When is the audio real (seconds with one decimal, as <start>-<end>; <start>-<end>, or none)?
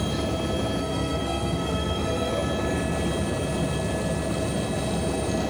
0.0-0.8; 2.3-5.5